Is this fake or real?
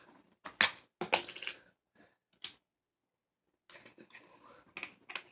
real